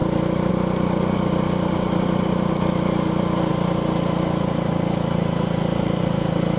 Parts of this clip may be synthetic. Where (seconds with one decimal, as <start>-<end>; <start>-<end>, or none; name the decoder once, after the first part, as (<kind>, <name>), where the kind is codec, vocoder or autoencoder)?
none